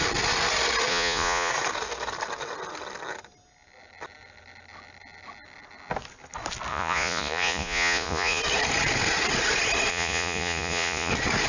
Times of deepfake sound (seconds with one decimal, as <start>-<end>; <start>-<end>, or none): 0.9-1.5; 6.7-8.4; 9.9-11.1